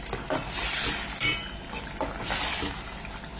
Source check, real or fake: fake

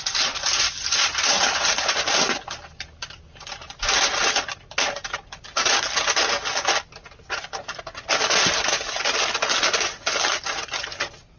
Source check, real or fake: real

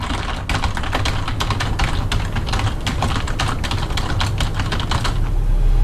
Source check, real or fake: real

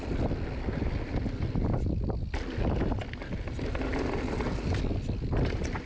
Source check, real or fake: real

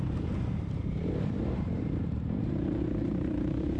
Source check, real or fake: fake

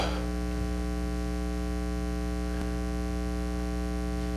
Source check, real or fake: real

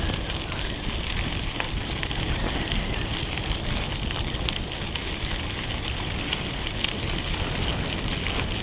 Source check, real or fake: real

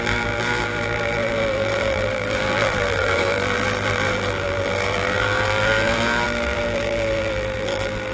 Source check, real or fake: fake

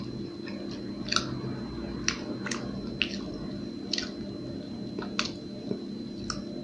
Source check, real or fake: real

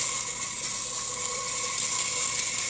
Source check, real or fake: real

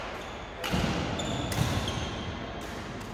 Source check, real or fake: real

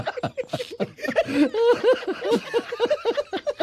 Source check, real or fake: real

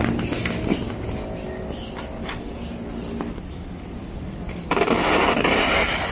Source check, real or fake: fake